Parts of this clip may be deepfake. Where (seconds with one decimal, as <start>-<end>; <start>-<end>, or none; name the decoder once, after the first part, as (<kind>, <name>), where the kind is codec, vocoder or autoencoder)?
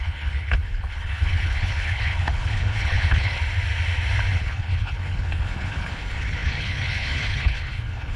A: 0.0-3.4 (codec, HILCodec); 4.3-8.2